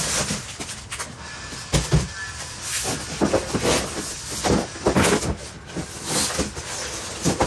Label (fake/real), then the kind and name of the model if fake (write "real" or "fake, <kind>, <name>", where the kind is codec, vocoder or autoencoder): real